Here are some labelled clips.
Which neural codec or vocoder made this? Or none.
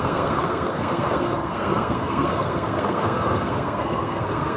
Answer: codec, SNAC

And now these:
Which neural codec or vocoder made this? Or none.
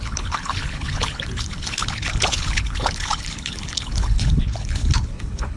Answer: codec, HILCodec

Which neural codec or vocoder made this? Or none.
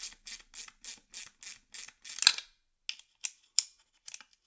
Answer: none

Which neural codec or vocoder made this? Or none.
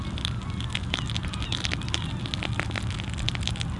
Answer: none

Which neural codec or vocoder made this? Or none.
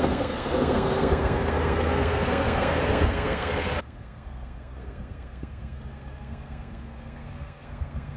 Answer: codec, SNAC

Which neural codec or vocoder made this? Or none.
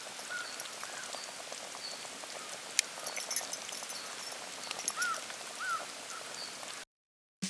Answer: none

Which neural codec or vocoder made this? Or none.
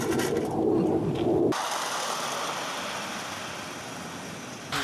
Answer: none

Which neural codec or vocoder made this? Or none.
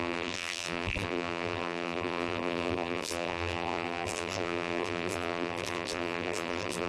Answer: vocoder, BigVGAN v2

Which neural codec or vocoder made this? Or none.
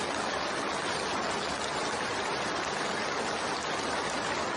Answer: none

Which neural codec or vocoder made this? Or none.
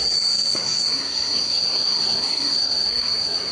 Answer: codec, SNAC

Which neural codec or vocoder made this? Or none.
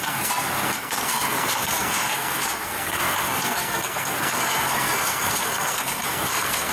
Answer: codec, SNAC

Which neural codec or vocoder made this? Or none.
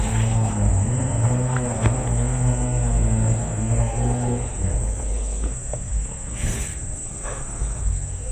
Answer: codec, SNAC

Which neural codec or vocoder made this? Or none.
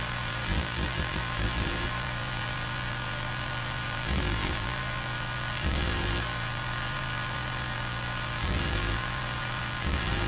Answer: vocoder, BigVGAN v2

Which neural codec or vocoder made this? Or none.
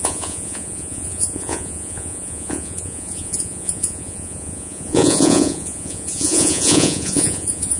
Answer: vocoder, Vocos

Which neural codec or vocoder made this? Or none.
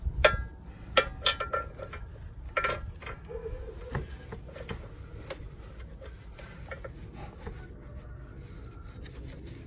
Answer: none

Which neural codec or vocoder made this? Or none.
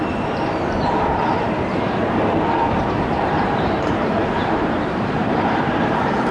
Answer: vocoder, BigVGAN v2